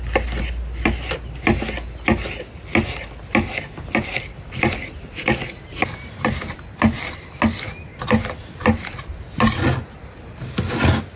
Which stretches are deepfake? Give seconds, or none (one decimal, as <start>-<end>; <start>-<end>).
7.9-9.3